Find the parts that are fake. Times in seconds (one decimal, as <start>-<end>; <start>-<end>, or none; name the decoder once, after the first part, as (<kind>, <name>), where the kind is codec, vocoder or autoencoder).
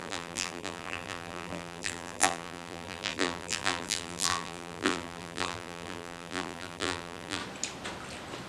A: 0.0-7.4 (vocoder, BigVGAN v2)